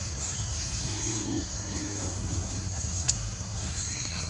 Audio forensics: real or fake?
fake